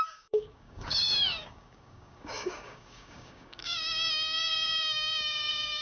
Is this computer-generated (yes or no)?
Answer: yes